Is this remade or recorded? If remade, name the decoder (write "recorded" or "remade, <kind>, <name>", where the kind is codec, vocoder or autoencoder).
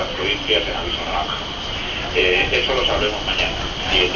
recorded